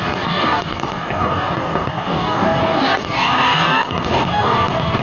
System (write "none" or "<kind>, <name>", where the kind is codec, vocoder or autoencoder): codec, DAC